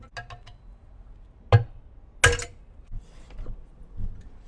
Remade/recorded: recorded